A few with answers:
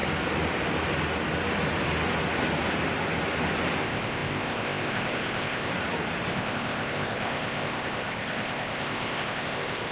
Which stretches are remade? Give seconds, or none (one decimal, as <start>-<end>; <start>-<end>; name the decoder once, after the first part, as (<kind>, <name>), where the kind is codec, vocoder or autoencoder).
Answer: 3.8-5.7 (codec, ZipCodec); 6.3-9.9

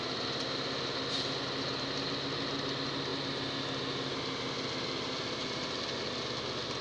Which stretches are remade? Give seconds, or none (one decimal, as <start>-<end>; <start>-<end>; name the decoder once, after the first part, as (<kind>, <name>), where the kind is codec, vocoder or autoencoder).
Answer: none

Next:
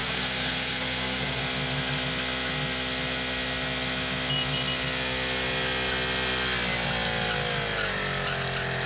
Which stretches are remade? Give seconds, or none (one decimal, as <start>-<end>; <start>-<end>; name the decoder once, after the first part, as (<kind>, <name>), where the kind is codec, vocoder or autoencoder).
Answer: 0.0-1.4 (codec, SNAC)

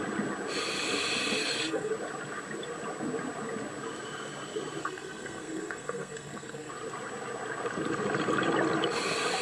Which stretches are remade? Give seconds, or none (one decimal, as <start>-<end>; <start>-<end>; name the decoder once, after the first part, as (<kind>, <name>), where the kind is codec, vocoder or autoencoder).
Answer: 1.4-1.9 (codec, SNAC); 4.8-6.7

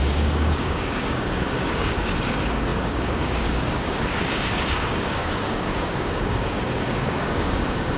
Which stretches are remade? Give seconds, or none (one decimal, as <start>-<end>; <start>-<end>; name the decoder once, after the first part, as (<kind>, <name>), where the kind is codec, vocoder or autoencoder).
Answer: 0.0-8.0 (codec, DAC)

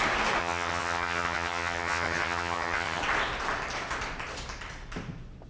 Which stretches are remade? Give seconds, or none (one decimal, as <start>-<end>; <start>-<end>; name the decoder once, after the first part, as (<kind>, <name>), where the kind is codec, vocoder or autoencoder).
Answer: 0.4-3.0 (vocoder, HiFi-GAN)

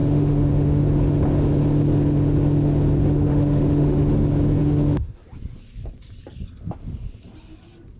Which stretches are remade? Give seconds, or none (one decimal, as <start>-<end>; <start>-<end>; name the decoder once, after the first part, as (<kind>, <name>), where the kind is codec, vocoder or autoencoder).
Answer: 0.0-0.8 (autoencoder, DAC-VAE); 3.0-4.1; 4.6-5.2